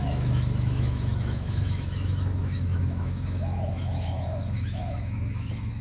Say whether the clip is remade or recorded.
remade